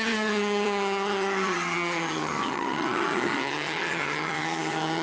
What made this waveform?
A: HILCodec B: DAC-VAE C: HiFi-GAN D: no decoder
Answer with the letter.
C